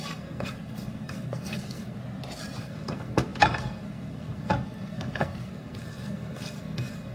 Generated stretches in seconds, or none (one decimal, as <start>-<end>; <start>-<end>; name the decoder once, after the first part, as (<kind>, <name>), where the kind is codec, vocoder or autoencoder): 0.0-2.0 (codec, SNAC); 2.6-7.1